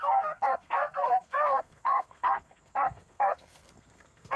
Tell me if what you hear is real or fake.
fake